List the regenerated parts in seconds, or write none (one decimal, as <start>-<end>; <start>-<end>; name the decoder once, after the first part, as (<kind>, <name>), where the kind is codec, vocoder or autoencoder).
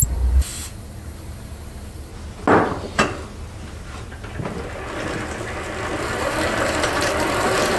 0.0-2.1 (vocoder, BigVGAN v2); 6.0-7.8